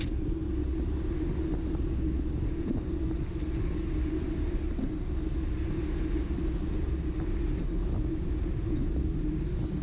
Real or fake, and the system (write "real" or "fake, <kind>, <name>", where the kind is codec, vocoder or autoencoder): real